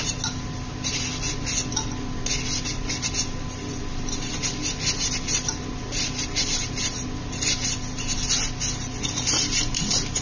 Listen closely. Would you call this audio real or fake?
real